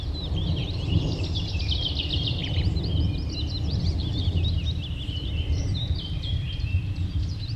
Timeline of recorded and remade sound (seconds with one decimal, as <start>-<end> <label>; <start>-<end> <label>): 0.0-2.4 remade; 2.4-3.5 recorded; 3.5-4.6 remade; 4.6-5.9 recorded; 5.9-7.6 remade